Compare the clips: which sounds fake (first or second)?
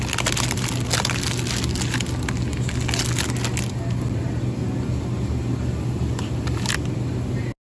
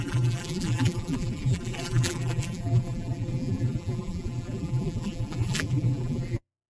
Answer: second